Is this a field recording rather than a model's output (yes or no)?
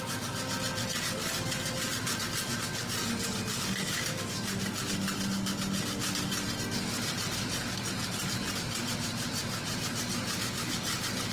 yes